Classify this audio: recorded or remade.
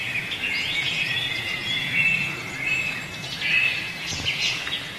remade